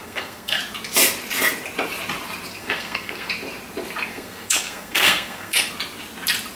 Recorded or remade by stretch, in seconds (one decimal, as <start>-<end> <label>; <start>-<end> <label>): 0.0-0.6 remade; 0.6-2.6 recorded; 2.6-3.3 remade; 3.3-4.1 recorded; 4.1-5.7 remade; 5.7-6.6 recorded